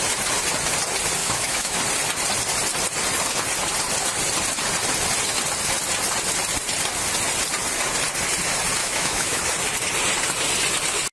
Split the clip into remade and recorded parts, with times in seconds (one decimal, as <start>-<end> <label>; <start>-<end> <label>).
0.0-1.2 recorded; 1.2-1.8 remade; 1.8-8.8 recorded; 8.8-9.4 remade; 9.4-11.1 recorded